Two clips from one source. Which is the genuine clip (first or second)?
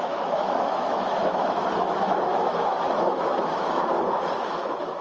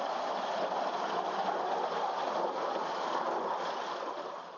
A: second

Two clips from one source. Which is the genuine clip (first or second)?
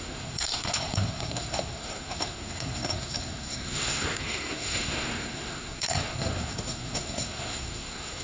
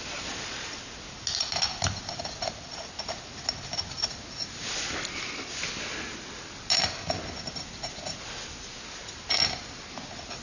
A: second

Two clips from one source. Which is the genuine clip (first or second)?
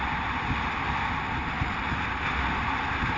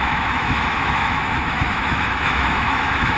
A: first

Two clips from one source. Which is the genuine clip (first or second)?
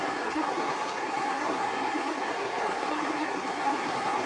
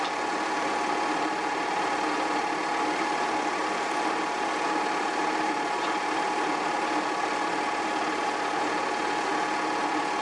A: second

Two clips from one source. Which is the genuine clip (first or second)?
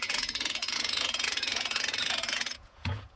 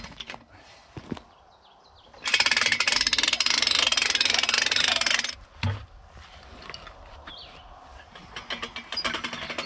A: second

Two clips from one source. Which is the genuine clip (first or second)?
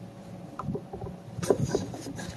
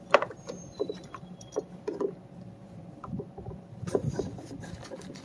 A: first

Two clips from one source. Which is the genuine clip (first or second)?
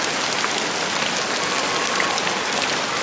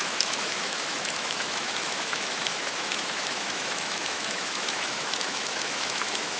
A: first